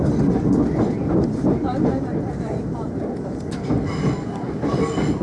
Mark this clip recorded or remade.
recorded